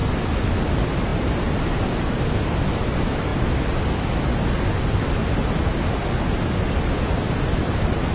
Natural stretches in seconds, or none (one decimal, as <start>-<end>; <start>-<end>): 0.0-8.1